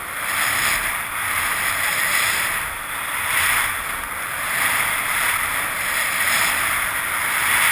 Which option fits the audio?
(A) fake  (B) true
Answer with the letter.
B